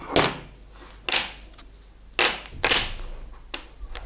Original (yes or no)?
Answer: yes